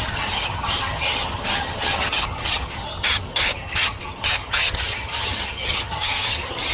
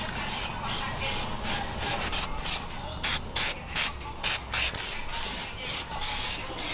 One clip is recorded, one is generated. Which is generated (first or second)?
first